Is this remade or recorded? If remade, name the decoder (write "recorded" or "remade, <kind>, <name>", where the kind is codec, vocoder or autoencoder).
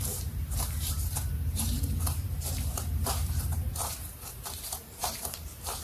remade, vocoder, BigVGAN v2